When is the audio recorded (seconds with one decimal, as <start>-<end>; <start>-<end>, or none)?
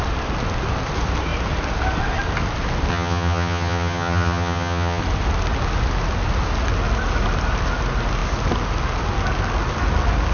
0.0-2.9; 5.0-10.3